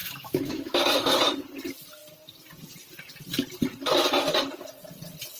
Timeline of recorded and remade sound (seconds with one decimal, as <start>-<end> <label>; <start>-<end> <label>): 0.0-0.8 remade; 0.8-5.4 recorded

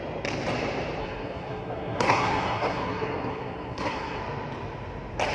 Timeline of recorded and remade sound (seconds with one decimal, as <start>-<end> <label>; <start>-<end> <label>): 0.0-1.0 recorded; 1.0-4.2 remade; 4.2-5.3 recorded

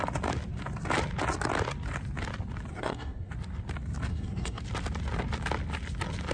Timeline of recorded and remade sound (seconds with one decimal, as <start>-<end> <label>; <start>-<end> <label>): 0.0-2.7 recorded; 2.7-3.3 remade; 3.3-4.1 recorded; 4.1-4.6 remade; 4.6-6.3 recorded

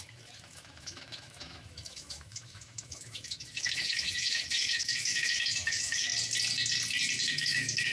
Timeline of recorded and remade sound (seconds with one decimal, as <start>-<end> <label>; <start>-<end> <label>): 0.0-6.1 remade; 6.1-7.3 recorded; 7.3-7.9 remade

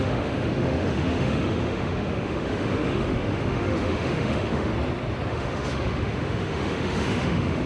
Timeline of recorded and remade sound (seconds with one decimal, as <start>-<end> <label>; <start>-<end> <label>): 0.0-4.7 remade; 4.7-5.3 recorded; 5.3-7.7 remade